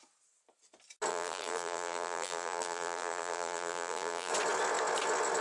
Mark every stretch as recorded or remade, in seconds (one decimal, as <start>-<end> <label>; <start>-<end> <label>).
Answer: 0.0-1.1 recorded; 1.1-4.3 remade; 4.3-5.4 recorded